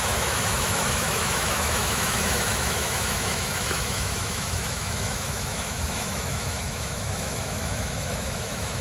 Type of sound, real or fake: fake